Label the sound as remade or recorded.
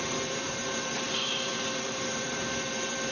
remade